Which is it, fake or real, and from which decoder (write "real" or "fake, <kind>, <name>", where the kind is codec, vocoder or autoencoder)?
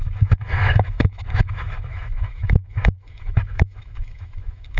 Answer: fake, autoencoder, DAC-VAE